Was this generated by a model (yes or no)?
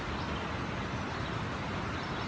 no